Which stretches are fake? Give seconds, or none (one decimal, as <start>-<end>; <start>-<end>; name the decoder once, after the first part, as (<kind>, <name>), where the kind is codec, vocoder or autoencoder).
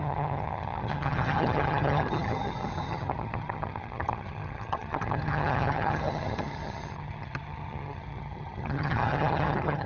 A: 0.0-9.9 (vocoder, HiFi-GAN)